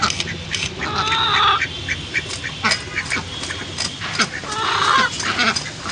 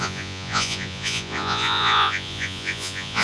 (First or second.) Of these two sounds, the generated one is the second